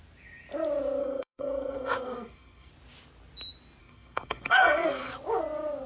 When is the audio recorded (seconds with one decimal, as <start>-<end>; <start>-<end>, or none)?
0.0-1.0; 2.7-3.8; 5.1-5.9